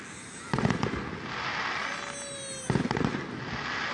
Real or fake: real